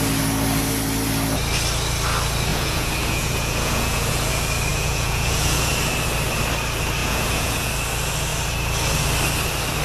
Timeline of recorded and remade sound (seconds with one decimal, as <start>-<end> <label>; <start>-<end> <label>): 0.0-2.5 recorded; 2.5-4.3 remade; 4.3-4.7 recorded; 4.7-5.7 remade; 5.7-7.0 recorded; 7.0-7.7 remade; 7.7-9.8 recorded